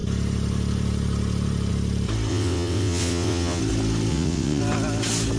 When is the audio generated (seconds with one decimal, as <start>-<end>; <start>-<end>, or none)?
2.3-3.6; 4.1-4.6